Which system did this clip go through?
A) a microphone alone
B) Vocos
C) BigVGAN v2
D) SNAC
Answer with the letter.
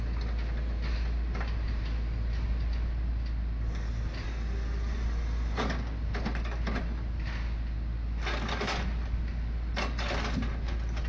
A